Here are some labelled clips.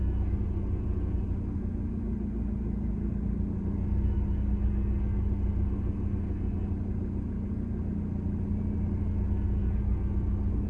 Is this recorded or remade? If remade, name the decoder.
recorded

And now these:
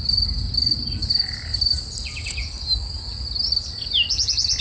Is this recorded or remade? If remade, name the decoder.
recorded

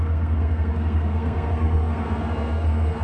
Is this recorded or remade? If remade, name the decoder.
remade, codec, SNAC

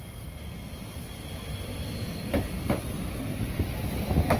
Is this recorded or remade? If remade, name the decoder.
recorded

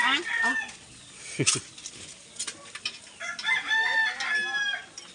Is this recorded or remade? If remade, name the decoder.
recorded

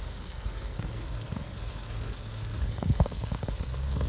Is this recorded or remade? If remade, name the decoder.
remade, codec, SNAC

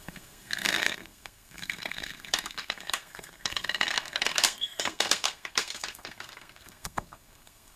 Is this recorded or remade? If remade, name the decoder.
remade, codec, SNAC